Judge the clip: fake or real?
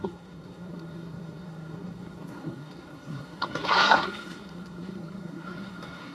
fake